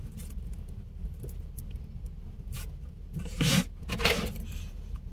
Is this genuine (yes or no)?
yes